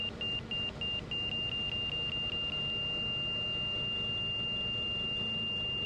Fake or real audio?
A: real